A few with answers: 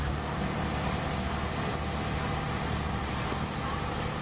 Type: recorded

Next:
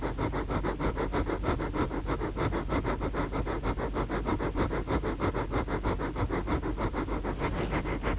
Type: recorded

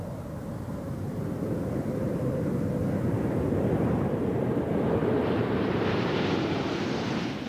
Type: remade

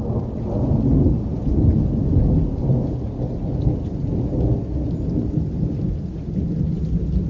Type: recorded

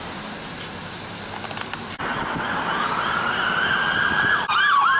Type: remade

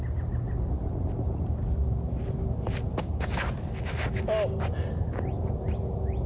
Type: recorded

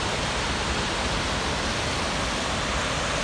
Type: recorded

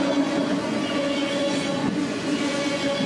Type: remade